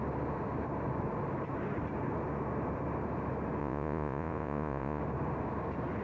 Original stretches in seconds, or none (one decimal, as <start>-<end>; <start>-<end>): 0.0-3.6; 5.0-6.0